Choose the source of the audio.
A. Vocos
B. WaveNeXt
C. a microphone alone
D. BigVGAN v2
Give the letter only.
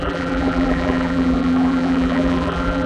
D